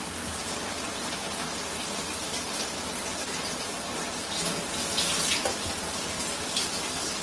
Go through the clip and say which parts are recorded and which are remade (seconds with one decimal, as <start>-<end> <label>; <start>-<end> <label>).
0.0-3.9 recorded; 3.9-4.4 remade; 4.4-7.2 recorded